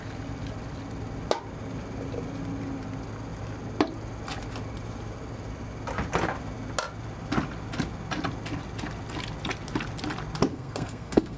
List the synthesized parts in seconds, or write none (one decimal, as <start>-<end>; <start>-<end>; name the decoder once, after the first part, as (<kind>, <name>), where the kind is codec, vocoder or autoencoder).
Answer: 10.5-11.4 (codec, SNAC)